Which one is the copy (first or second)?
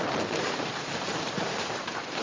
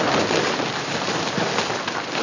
first